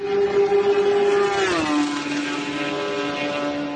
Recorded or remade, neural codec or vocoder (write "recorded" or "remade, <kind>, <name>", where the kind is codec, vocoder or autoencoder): recorded